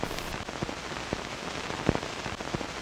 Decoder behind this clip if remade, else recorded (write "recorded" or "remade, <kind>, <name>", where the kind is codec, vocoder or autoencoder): recorded